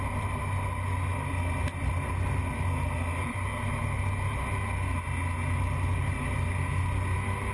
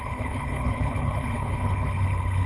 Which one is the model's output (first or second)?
second